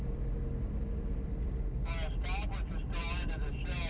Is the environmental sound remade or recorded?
recorded